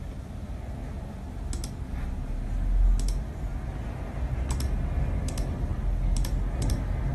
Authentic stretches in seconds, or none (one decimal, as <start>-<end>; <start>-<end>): 0.0-7.1